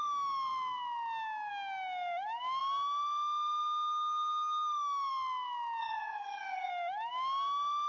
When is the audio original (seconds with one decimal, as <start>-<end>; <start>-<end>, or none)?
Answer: 0.0-5.8; 6.7-7.9